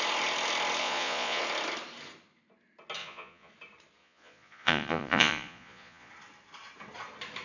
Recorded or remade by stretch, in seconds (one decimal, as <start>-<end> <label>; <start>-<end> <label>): 0.0-0.8 recorded; 0.8-1.4 remade; 1.4-3.0 recorded; 3.0-3.5 remade; 3.5-4.0 recorded; 4.0-6.1 remade; 6.1-7.4 recorded